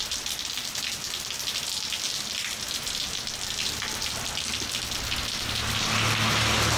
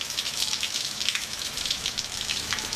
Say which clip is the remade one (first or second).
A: second